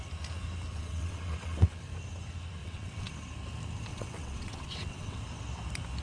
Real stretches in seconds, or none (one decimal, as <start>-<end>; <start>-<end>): 0.0-0.7; 1.8-2.6; 3.1-3.9; 5.2-6.0